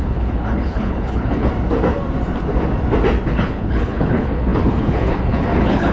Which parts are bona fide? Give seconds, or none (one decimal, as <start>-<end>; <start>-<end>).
1.5-3.3